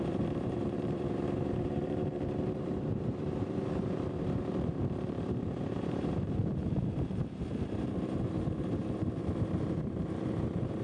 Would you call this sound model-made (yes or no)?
yes